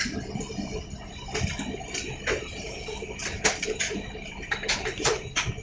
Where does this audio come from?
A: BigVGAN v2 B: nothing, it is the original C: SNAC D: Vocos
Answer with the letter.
A